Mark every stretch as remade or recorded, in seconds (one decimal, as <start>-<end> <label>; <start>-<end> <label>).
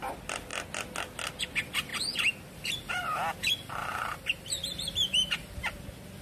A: 0.0-1.9 recorded; 1.9-2.9 remade; 2.9-3.8 recorded; 3.8-5.8 remade; 5.8-6.2 recorded